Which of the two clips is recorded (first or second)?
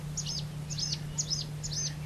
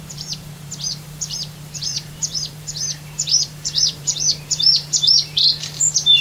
first